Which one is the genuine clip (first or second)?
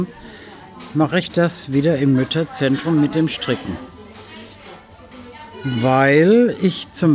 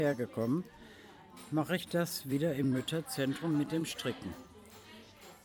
first